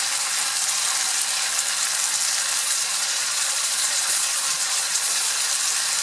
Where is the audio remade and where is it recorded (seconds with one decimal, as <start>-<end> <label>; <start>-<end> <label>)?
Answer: 0.0-2.6 recorded; 2.6-5.5 remade; 5.5-6.0 recorded